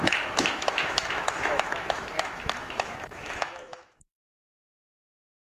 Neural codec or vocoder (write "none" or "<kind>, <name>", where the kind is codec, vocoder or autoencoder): autoencoder, DAC-VAE